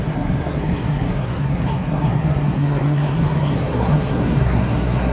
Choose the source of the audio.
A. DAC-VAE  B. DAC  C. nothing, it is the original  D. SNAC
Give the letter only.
D